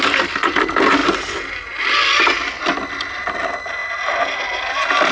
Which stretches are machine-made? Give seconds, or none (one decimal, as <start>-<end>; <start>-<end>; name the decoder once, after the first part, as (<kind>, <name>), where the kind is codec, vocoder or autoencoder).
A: none